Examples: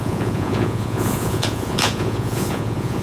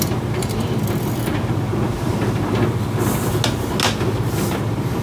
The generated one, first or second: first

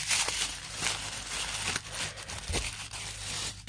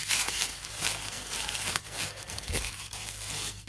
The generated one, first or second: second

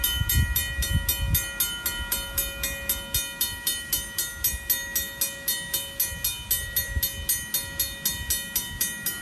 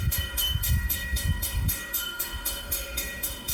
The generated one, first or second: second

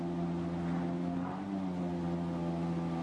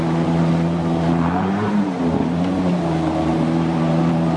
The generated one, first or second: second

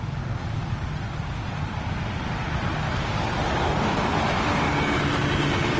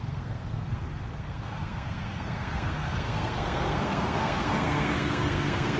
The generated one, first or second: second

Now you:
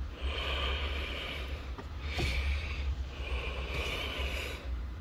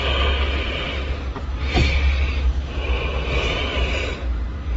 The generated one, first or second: first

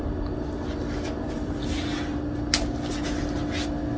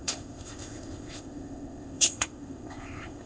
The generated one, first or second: second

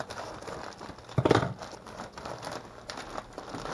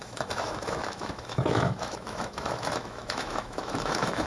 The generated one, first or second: second